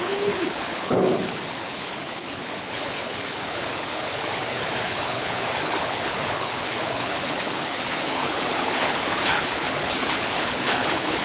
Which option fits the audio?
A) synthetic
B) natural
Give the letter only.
A